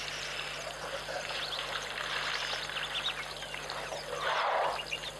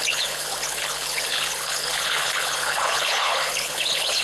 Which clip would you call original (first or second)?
first